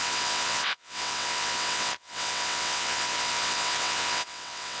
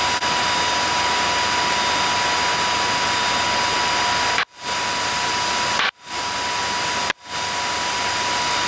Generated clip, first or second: first